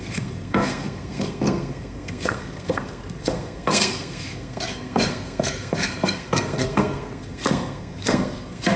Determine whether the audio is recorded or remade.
remade